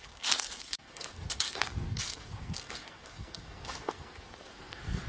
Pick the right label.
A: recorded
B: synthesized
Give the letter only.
B